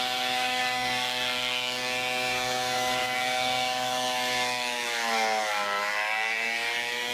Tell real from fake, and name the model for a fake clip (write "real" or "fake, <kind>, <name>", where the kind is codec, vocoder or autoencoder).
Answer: fake, codec, DAC